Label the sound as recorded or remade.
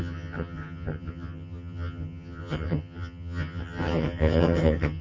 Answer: remade